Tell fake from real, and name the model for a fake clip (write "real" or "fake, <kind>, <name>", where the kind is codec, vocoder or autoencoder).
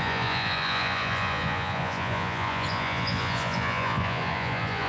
fake, vocoder, Vocos